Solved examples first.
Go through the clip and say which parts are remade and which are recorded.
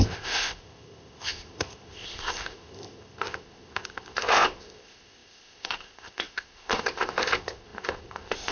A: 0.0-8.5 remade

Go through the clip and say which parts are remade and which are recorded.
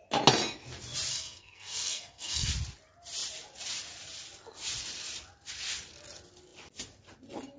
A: 0.0-1.1 recorded; 1.1-2.5 remade; 2.5-7.6 recorded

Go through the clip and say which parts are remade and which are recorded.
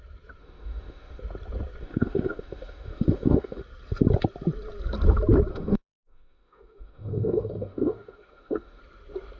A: 0.0-0.4 recorded; 0.4-1.2 remade; 1.2-1.8 recorded; 1.8-3.6 remade; 3.6-5.5 recorded; 5.5-8.8 remade; 8.8-9.4 recorded